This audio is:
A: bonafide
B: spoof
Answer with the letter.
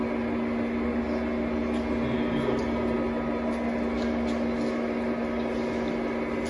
A